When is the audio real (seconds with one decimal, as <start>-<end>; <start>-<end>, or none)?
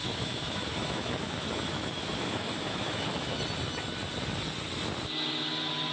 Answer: 3.4-5.9